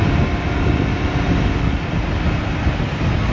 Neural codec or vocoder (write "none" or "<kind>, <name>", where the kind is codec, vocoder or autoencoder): none